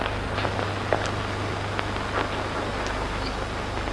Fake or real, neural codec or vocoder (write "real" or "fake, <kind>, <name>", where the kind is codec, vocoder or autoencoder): real